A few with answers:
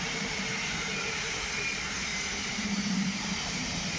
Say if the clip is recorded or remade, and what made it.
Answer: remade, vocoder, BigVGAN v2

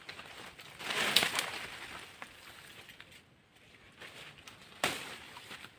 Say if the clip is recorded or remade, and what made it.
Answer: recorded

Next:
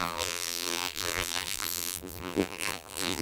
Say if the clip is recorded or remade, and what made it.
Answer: remade, vocoder, BigVGAN v2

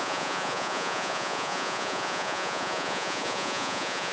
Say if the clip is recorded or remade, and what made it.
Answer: remade, vocoder, Vocos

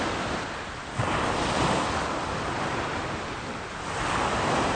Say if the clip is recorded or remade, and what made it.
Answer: recorded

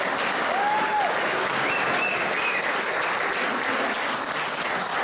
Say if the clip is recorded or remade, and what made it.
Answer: recorded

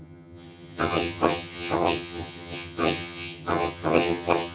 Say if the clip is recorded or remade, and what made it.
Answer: remade, vocoder, HiFi-GAN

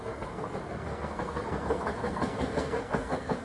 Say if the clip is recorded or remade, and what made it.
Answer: remade, codec, SNAC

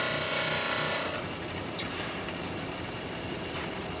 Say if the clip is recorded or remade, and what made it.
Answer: remade, vocoder, BigVGAN v2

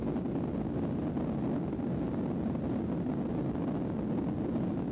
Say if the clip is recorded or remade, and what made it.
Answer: recorded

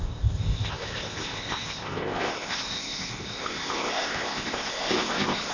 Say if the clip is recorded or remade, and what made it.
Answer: remade, codec, ZipCodec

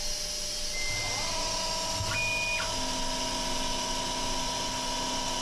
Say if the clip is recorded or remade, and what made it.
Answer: recorded